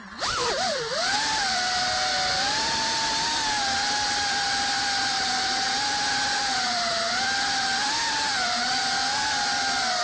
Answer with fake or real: fake